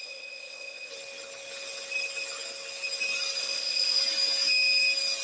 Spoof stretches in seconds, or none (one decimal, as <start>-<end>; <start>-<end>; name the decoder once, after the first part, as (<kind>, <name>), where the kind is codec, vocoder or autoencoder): 0.0-0.9 (codec, ZipCodec); 3.4-4.0